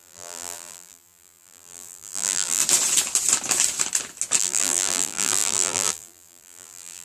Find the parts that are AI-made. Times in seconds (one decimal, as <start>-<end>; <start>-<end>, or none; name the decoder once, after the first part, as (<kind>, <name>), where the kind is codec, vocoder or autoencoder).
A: 0.0-2.6 (vocoder, BigVGAN v2); 4.4-7.0